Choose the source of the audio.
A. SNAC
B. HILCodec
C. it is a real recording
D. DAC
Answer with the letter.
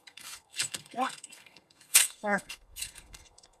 A